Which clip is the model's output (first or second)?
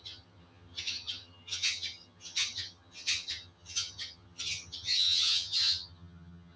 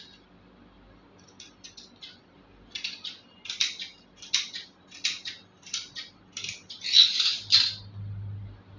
first